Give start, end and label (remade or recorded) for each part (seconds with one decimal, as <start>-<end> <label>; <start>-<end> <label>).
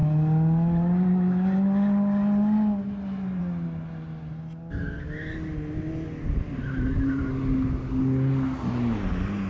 0.0-9.5 recorded